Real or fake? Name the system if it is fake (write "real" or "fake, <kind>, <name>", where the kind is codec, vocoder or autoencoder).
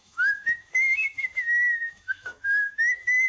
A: fake, autoencoder, DAC-VAE